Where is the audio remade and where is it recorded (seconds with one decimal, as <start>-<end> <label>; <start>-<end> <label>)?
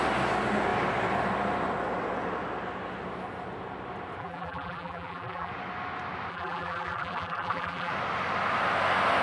0.0-4.2 recorded; 4.2-5.5 remade; 5.5-6.3 recorded; 6.3-7.9 remade; 7.9-9.2 recorded